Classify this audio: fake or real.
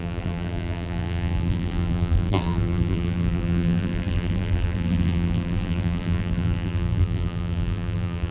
fake